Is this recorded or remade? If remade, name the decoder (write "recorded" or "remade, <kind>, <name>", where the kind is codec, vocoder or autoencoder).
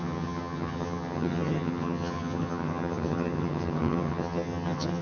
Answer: remade, vocoder, HiFi-GAN